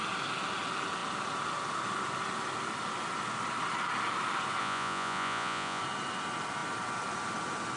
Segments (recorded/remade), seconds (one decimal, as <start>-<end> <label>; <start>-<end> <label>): 0.0-4.6 recorded; 4.6-5.8 remade; 5.8-7.8 recorded